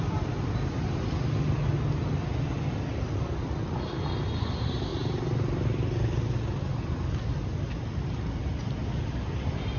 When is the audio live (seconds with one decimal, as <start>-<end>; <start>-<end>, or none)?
0.0-9.8